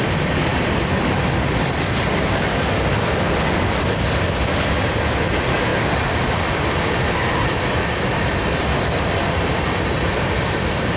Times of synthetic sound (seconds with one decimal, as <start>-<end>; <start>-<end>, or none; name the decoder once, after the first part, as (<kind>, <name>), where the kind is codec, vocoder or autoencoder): none